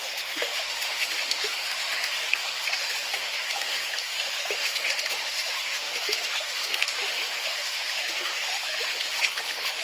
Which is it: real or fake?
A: fake